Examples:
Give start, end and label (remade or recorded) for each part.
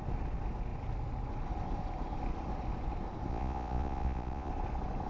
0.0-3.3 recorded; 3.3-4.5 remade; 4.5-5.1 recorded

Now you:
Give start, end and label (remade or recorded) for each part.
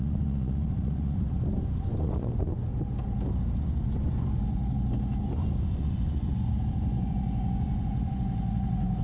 0.0-2.7 remade; 2.7-3.6 recorded; 3.6-4.6 remade; 4.6-5.2 recorded; 5.2-9.0 remade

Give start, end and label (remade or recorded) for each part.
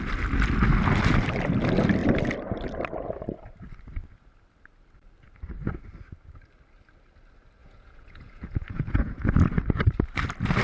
0.0-7.6 recorded; 7.6-9.3 remade; 9.3-10.6 recorded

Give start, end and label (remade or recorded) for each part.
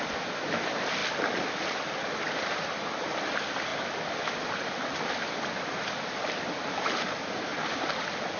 0.0-8.4 recorded